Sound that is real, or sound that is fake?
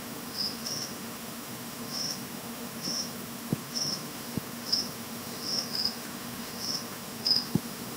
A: fake